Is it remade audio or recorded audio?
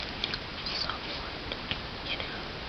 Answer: recorded